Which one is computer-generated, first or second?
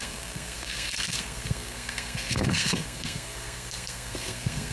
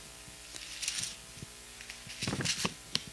first